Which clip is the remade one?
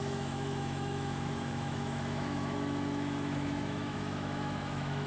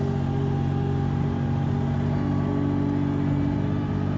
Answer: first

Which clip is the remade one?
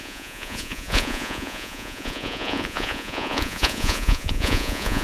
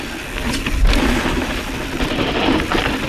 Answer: first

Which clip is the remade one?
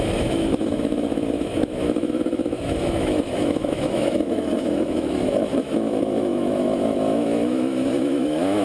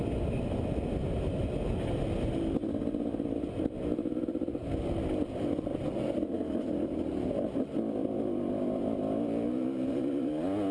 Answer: first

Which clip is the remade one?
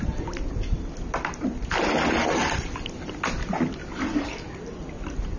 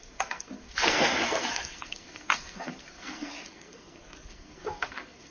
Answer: second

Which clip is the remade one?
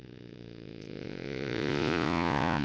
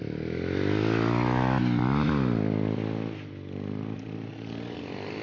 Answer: first